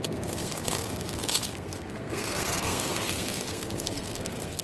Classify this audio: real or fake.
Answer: fake